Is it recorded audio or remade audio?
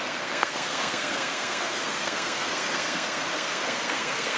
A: remade